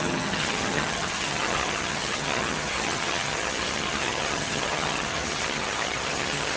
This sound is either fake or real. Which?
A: fake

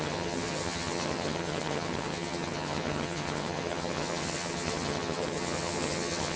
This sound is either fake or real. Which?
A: fake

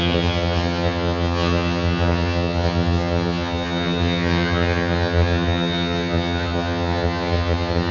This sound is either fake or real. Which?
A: fake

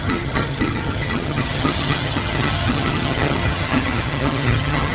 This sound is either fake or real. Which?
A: fake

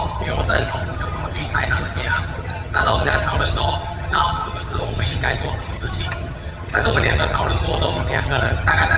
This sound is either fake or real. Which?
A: fake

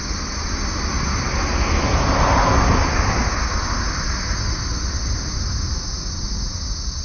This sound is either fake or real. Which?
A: real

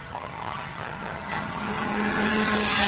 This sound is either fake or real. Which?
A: fake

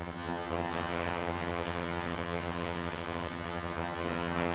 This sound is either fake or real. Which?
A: fake